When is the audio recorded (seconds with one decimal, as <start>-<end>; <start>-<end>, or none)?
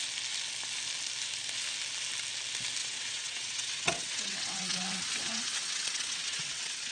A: 0.0-2.8